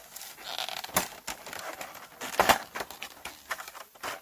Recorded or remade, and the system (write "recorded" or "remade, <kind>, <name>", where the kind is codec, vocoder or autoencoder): recorded